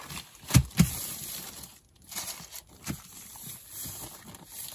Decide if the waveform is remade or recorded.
recorded